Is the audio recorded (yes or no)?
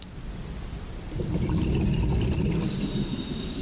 yes